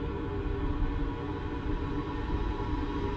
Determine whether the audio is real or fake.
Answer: real